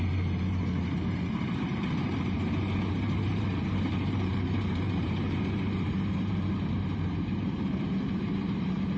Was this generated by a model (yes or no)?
yes